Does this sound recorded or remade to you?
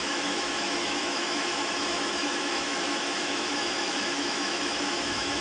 remade